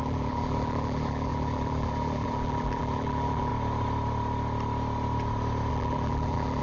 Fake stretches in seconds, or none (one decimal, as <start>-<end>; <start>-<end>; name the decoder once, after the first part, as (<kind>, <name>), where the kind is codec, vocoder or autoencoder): 0.0-3.5 (vocoder, BigVGAN v2); 5.7-6.6